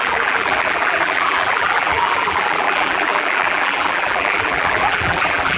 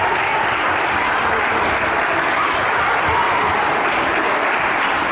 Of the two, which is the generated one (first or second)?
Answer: first